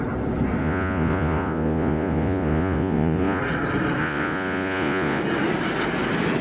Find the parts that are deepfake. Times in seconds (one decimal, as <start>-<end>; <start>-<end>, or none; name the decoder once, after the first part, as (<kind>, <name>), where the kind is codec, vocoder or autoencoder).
0.6-3.4 (vocoder, Vocos); 4.0-5.2